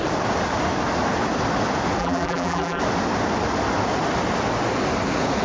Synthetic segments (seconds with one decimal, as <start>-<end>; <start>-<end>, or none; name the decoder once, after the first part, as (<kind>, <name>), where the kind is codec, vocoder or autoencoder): 2.0-2.8 (vocoder, BigVGAN v2)